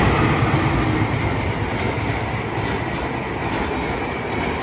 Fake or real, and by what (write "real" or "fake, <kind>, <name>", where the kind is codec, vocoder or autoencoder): real